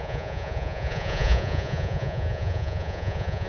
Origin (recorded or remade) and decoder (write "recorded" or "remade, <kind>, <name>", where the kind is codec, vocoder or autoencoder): remade, vocoder, Vocos